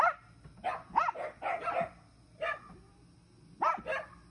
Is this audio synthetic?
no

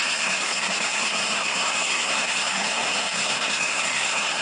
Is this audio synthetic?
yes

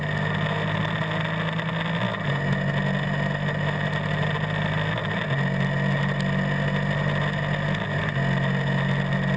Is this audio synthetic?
no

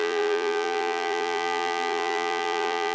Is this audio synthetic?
yes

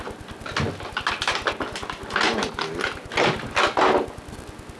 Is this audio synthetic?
no